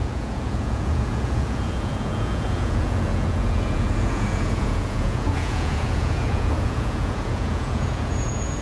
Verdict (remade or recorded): remade